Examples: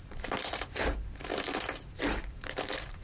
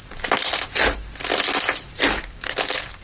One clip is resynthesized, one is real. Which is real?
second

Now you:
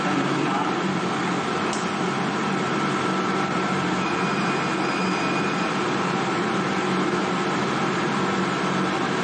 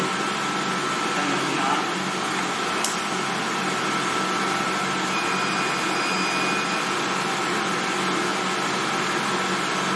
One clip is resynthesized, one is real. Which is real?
second